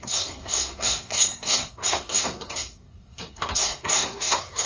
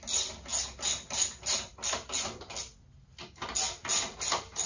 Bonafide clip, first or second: second